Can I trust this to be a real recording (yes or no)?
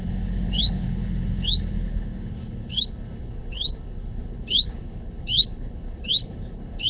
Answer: no